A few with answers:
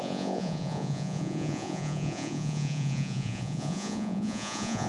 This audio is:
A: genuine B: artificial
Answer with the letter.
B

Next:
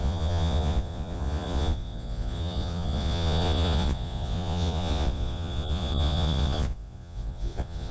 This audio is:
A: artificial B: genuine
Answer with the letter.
A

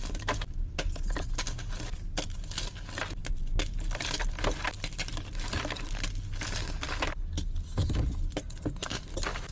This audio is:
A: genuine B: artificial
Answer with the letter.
A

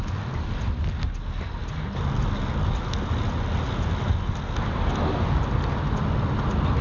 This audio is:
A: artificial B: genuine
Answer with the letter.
B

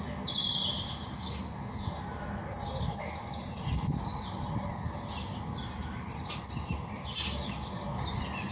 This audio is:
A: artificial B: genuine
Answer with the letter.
B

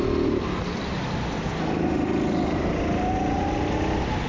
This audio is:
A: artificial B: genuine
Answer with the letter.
B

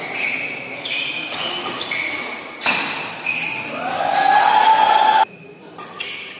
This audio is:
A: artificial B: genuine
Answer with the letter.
B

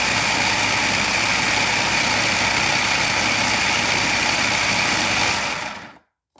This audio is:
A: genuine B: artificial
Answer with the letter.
A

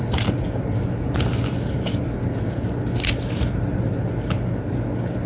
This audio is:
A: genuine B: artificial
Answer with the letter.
A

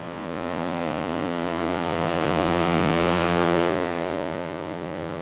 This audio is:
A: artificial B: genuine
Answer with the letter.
A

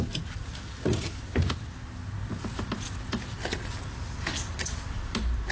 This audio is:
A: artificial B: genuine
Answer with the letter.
B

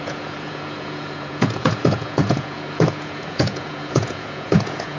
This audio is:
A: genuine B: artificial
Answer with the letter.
B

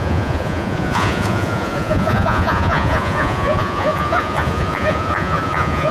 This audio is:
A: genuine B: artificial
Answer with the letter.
B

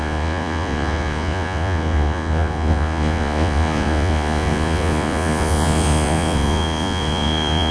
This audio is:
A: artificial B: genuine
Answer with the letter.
A